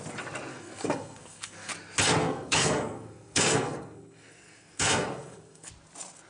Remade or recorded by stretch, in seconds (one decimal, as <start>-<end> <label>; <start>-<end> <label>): 0.0-0.5 recorded; 0.5-1.7 remade; 1.7-2.2 recorded; 2.2-5.7 remade; 5.7-6.3 recorded